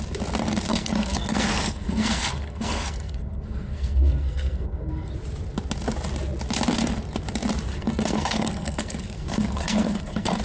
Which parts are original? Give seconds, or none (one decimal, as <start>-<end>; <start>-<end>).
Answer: 0.0-0.7; 5.1-7.7